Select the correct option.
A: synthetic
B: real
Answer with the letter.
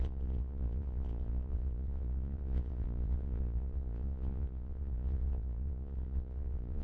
A